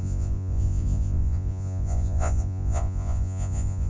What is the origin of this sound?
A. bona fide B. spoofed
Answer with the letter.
B